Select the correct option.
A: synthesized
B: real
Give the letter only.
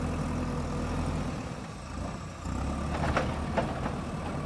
B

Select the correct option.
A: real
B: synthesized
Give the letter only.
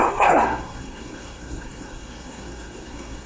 B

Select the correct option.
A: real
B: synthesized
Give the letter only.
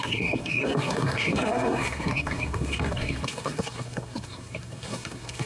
B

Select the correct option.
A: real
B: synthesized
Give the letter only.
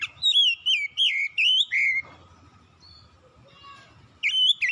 A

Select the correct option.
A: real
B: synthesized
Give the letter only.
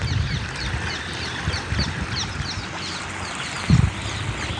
A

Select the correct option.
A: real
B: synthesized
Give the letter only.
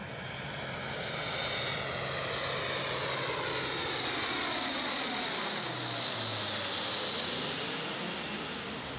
A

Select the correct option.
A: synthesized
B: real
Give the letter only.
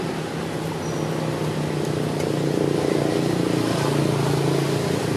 B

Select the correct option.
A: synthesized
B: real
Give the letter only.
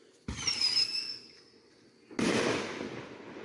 B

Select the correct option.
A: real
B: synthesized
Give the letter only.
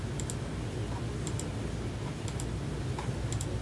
A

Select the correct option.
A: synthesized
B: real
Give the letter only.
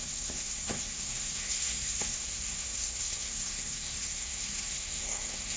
A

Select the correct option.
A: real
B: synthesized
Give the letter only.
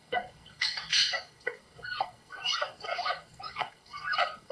B